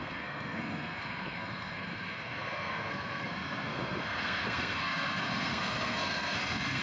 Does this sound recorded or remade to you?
remade